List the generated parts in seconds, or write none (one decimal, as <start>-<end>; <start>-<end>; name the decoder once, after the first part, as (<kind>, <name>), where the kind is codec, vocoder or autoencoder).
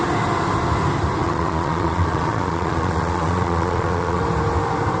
1.2-4.2 (vocoder, Vocos)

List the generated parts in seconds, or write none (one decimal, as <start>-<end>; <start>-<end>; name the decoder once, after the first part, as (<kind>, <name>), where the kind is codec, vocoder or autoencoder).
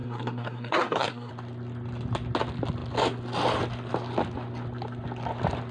0.0-1.3 (codec, SNAC)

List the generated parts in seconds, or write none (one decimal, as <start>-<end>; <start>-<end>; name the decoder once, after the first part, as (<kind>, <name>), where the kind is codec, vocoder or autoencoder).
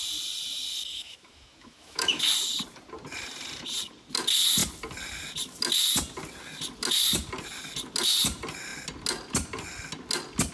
0.9-2.2 (autoencoder, DAC-VAE)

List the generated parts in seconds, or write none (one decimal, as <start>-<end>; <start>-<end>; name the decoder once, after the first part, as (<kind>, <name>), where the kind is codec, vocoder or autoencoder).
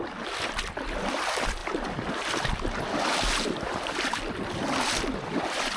none